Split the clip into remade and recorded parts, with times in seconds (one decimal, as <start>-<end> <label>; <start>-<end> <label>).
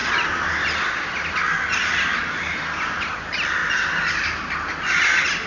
0.0-5.5 recorded